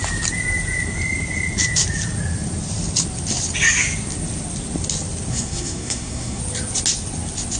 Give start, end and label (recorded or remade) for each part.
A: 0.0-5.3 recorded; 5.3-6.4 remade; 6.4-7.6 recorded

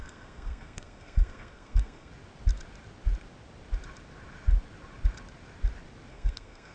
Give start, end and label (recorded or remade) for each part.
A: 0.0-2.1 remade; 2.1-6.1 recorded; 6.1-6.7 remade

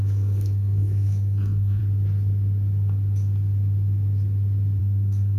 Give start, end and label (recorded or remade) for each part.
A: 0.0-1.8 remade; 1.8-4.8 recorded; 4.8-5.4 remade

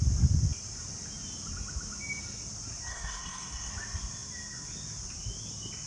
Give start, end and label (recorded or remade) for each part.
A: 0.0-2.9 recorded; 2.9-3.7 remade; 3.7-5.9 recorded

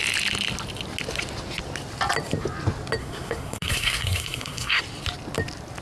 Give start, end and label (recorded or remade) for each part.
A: 0.0-3.0 recorded; 3.0-4.8 remade; 4.8-5.8 recorded

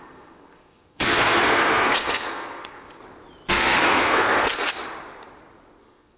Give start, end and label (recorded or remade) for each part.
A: 0.0-3.0 remade; 3.0-3.5 recorded; 3.5-4.7 remade; 4.7-5.8 recorded; 5.8-6.2 remade

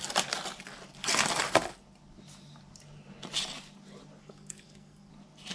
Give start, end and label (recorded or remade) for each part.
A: 0.0-4.2 recorded; 4.2-5.1 remade; 5.1-5.5 recorded

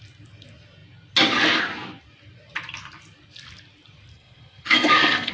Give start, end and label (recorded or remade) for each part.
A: 0.0-4.1 recorded; 4.1-5.3 remade